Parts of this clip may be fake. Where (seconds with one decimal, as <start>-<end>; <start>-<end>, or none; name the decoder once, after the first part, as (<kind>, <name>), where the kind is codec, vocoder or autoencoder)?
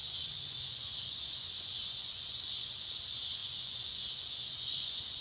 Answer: 0.0-5.2 (vocoder, Vocos)